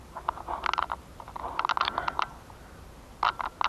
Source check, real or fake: real